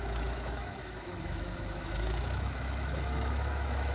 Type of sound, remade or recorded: remade